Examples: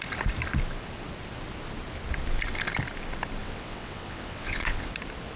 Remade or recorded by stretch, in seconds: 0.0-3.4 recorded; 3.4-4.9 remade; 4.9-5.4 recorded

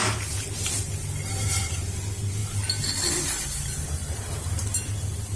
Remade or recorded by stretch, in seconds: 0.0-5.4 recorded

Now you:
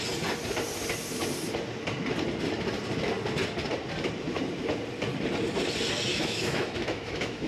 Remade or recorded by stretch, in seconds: 0.0-6.1 recorded; 6.1-7.5 remade